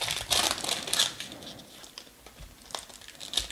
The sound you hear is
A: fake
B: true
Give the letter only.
B